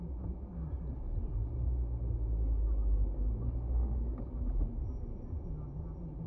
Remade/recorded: recorded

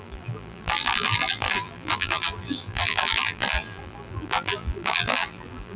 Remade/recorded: remade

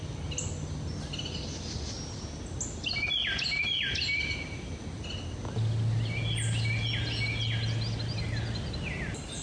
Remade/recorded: recorded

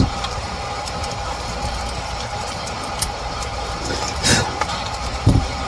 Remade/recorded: remade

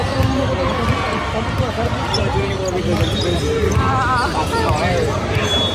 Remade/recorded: recorded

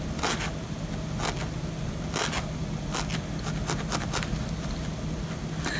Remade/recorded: recorded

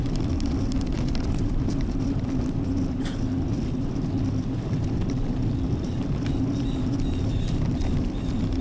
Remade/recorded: remade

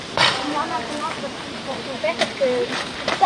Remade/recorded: remade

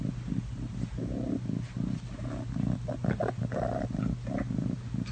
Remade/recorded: recorded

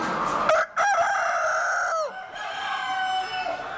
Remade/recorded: recorded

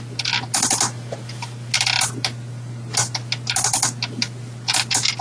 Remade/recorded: recorded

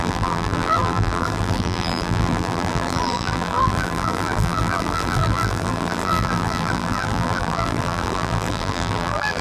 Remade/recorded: remade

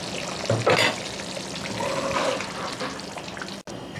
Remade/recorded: recorded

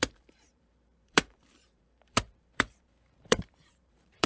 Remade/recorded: remade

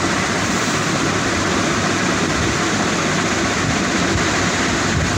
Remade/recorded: recorded